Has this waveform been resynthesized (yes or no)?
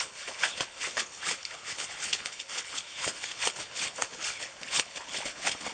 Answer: yes